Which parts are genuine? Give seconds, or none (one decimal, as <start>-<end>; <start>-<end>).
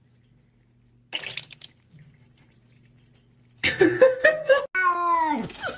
0.0-3.6; 4.6-5.8